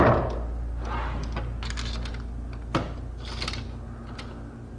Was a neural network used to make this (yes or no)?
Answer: no